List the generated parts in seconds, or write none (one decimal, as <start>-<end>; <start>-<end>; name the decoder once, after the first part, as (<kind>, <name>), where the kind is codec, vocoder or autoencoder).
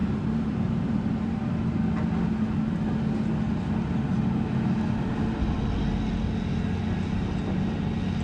0.0-1.7 (vocoder, BigVGAN v2)